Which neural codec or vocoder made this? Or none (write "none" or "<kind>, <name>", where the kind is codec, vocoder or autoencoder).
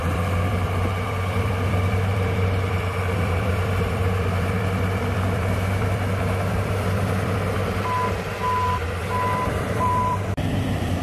vocoder, BigVGAN v2